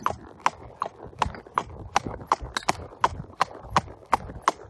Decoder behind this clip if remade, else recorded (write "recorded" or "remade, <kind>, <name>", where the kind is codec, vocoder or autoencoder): recorded